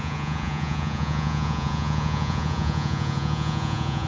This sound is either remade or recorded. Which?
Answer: remade